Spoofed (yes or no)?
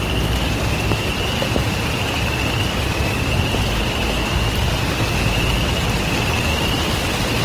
no